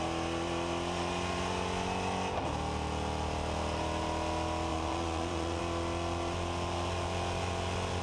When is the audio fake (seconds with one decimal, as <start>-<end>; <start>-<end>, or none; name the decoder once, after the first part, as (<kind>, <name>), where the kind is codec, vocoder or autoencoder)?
4.7-5.6 (vocoder, Vocos)